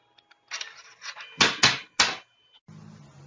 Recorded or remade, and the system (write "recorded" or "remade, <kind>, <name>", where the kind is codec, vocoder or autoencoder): recorded